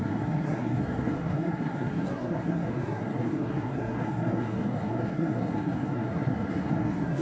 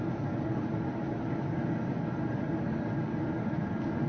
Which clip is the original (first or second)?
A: second